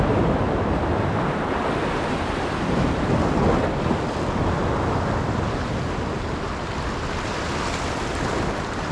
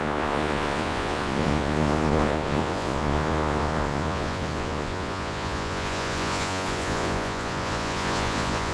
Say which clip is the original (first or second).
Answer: first